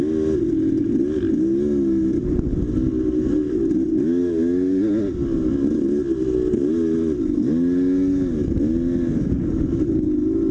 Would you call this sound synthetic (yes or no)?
no